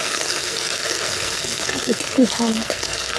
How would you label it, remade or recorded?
remade